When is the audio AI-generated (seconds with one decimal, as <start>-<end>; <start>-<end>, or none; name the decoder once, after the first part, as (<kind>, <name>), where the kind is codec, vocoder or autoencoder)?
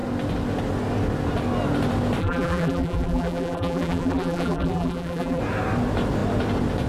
2.2-5.4 (vocoder, BigVGAN v2)